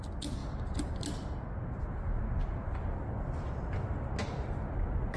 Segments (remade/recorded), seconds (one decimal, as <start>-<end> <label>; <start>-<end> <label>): 0.0-5.2 recorded